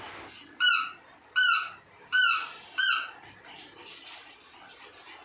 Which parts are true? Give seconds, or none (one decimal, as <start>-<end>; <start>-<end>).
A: 0.0-5.2